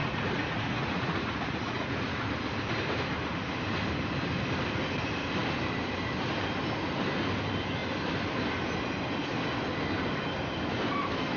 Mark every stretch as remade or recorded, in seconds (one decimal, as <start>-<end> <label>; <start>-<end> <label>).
0.0-2.2 remade; 2.2-11.4 recorded